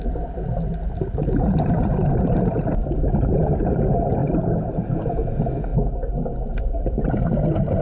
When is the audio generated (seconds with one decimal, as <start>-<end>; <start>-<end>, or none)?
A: 4.2-5.0